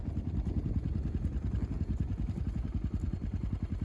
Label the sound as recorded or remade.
recorded